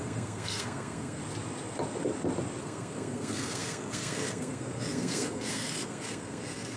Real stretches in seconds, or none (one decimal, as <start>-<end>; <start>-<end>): 1.2-2.6